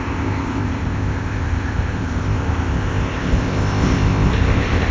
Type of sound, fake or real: fake